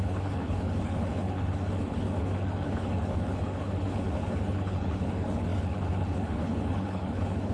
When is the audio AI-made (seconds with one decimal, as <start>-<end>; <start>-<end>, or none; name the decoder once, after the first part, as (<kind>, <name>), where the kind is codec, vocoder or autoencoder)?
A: 0.0-7.5 (codec, HILCodec)